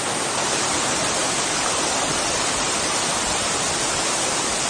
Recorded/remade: recorded